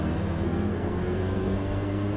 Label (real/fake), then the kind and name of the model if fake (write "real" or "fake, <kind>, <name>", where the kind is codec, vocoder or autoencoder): fake, codec, SNAC